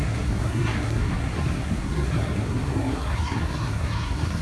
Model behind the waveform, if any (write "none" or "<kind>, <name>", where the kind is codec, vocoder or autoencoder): codec, SNAC